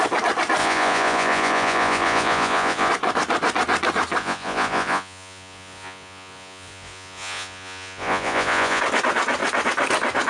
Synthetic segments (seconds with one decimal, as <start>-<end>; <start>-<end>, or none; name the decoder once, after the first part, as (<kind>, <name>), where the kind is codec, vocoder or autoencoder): 0.6-2.9 (vocoder, Vocos); 4.2-8.8